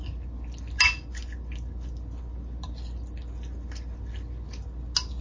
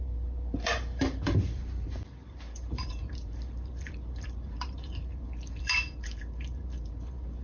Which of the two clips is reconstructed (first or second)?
second